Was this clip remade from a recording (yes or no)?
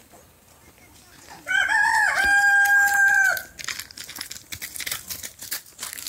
no